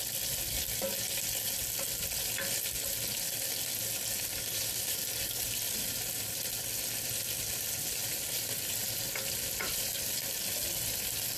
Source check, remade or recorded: recorded